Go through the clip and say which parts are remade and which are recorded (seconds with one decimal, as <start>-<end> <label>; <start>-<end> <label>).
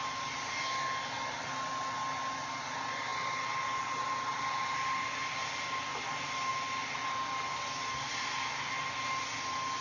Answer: 0.0-9.8 recorded